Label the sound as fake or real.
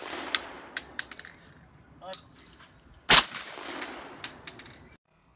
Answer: real